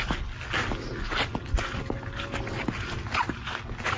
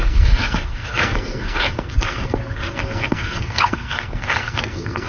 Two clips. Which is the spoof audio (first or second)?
second